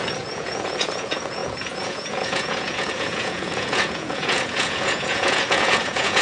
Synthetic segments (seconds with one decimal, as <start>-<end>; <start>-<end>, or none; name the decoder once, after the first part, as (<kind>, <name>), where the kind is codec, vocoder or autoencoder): 0.0-6.2 (vocoder, Vocos)